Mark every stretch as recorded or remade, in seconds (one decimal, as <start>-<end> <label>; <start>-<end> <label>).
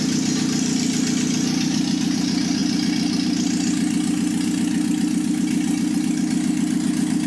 0.0-7.3 recorded